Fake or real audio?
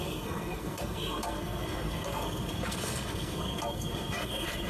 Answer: fake